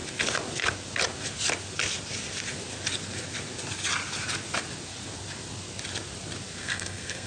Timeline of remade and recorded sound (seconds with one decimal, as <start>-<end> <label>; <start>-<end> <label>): 0.0-6.6 recorded; 6.6-7.3 remade